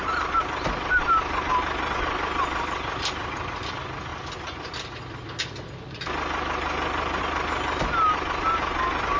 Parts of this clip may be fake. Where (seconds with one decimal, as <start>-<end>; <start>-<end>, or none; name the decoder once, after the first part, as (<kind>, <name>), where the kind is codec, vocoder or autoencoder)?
none